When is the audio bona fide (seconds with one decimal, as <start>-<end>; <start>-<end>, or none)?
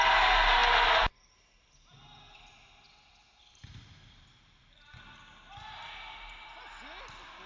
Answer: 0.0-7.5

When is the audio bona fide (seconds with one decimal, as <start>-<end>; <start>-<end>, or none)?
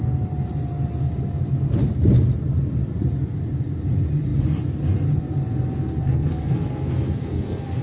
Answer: 0.0-6.0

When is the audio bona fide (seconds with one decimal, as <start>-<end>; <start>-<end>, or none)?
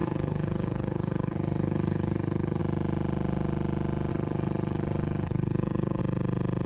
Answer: 2.6-4.1; 6.0-6.7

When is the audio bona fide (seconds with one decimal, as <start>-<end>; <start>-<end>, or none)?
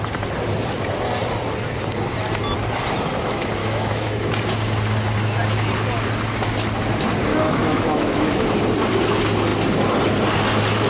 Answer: 0.0-3.6; 4.3-7.3; 8.5-10.9